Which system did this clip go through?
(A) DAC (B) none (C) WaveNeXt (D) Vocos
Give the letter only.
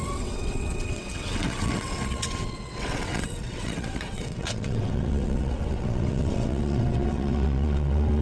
C